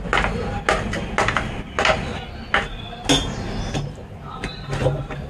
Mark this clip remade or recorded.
recorded